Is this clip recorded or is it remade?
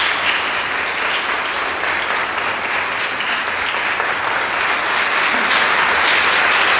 recorded